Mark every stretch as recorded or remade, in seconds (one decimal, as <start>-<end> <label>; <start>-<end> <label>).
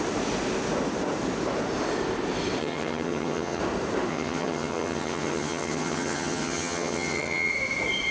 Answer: 0.0-2.6 recorded; 2.6-3.6 remade; 3.6-4.1 recorded; 4.1-7.5 remade; 7.5-8.1 recorded